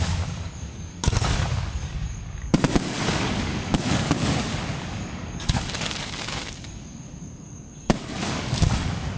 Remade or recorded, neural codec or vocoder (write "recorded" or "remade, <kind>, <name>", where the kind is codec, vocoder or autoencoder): remade, codec, DAC